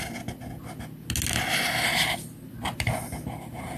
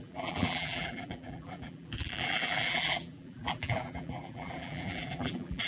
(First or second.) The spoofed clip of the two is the second